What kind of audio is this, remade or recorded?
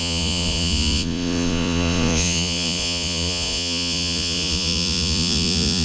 remade